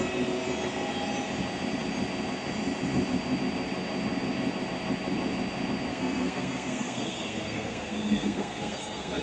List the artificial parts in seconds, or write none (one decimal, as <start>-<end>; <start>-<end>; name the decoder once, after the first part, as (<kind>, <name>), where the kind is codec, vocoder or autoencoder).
5.9-9.2 (codec, SNAC)